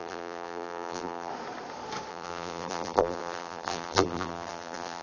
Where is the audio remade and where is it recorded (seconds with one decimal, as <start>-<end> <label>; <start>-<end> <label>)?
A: 0.0-1.3 remade; 1.3-2.1 recorded; 2.1-5.0 remade